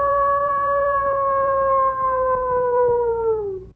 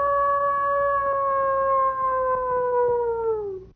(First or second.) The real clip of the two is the second